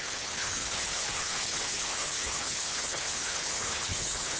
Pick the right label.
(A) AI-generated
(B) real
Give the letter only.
A